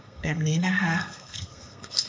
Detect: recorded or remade remade